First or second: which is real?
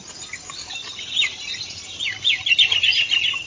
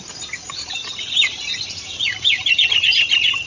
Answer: first